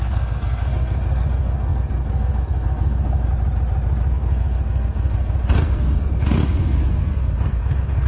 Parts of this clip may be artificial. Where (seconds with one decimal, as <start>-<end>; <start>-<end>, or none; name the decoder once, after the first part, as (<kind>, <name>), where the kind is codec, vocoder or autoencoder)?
0.0-3.3 (codec, SNAC); 4.1-8.1